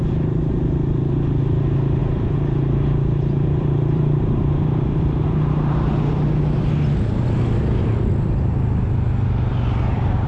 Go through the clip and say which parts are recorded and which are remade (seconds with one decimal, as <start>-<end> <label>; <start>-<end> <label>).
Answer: 0.0-2.0 recorded; 2.0-6.1 remade; 6.1-10.3 recorded